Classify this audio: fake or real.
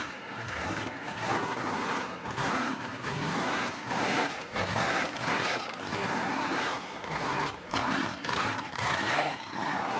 fake